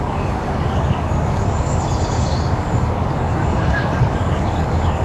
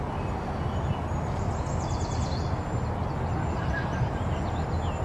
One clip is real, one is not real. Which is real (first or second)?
second